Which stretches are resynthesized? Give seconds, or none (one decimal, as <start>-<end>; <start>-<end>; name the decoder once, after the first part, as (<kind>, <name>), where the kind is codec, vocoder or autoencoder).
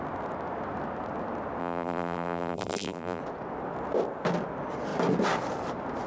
1.6-3.2 (vocoder, BigVGAN v2)